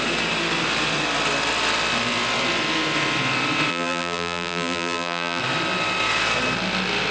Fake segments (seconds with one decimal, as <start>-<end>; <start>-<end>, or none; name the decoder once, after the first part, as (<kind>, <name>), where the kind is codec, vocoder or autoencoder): 3.7-5.4 (vocoder, BigVGAN v2)